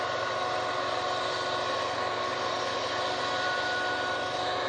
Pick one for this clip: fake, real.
real